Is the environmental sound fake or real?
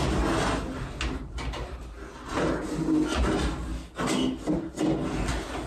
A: real